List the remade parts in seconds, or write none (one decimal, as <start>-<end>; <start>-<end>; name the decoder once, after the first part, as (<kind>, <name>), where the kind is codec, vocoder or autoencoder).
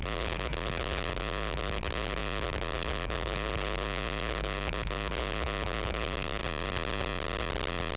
0.0-6.4 (autoencoder, DAC-VAE)